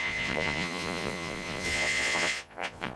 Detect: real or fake fake